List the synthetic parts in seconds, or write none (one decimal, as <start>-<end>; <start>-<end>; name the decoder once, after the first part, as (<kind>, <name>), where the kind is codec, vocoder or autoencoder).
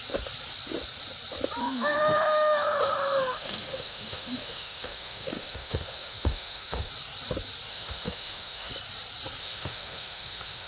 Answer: 1.6-6.9 (autoencoder, DAC-VAE); 7.7-8.7; 9.4-10.7